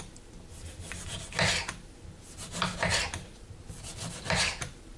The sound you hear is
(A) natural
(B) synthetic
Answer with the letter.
A